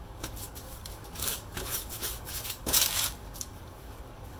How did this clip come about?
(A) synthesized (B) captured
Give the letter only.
A